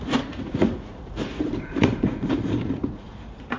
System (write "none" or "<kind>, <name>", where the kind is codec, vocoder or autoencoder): vocoder, Vocos